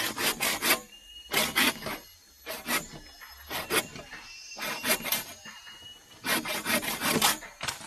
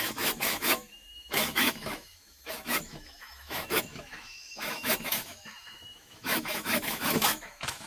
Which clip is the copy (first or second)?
second